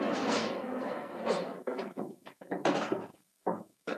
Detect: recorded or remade remade